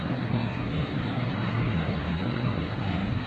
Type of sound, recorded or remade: remade